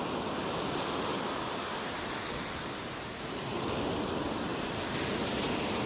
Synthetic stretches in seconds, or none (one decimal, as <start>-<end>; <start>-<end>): 1.1-1.7